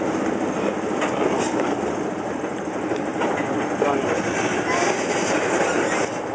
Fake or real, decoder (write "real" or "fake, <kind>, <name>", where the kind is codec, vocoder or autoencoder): real